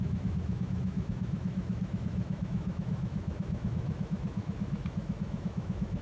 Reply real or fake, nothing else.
fake